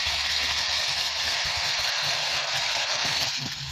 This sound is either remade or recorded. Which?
remade